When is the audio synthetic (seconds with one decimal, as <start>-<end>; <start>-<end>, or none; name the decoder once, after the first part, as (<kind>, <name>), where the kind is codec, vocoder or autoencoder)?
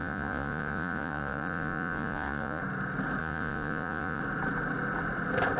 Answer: 0.0-2.6 (vocoder, Vocos); 3.2-4.2